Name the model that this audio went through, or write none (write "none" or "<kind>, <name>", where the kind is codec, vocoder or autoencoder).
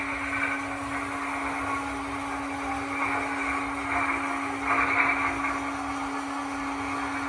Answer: none